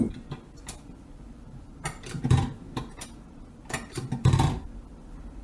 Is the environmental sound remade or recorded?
recorded